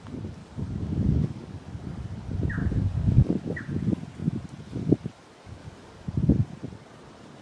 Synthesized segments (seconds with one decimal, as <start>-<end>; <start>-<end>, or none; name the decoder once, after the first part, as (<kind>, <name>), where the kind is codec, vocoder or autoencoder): 0.4-2.0 (codec, DAC); 2.6-3.6; 5.6-6.1